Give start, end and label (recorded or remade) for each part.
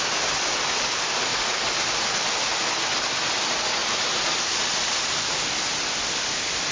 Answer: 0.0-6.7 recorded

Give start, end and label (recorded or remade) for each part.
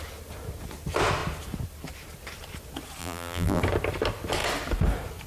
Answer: 0.0-3.0 recorded; 3.0-3.6 remade; 3.6-5.3 recorded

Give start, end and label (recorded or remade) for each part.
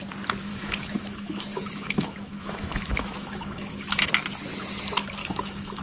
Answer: 0.0-0.5 recorded; 0.5-4.0 remade; 4.0-5.2 recorded; 5.2-5.8 remade